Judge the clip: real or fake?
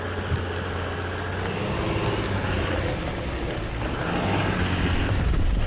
real